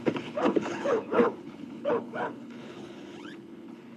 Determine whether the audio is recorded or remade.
remade